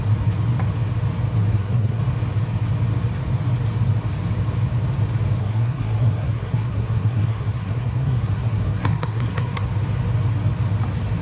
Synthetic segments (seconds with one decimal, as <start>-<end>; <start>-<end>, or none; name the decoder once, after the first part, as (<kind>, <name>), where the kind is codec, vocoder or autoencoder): 1.5-2.0 (codec, SNAC); 5.4-9.7